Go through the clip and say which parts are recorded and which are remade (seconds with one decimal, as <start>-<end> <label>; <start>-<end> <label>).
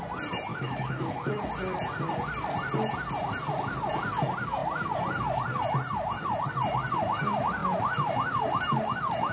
0.0-0.5 recorded; 0.5-1.4 remade; 1.4-9.3 recorded